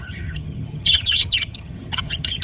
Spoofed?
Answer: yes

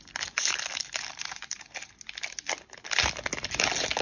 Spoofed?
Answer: no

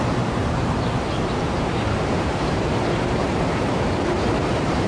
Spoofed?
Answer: yes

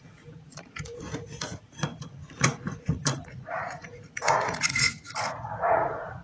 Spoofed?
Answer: yes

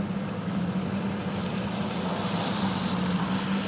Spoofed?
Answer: no